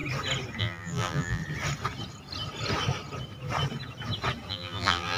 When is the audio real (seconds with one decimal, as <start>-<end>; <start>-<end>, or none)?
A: 0.0-0.6; 1.4-4.5